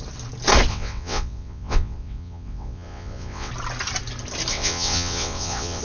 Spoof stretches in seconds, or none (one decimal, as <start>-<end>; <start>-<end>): 0.7-3.5; 4.5-5.8